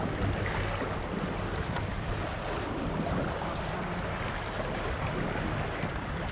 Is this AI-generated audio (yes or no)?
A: no